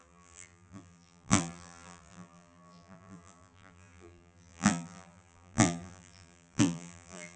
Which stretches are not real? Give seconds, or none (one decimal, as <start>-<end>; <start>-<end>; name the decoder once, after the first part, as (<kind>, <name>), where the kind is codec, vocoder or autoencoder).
0.0-7.4 (vocoder, BigVGAN v2)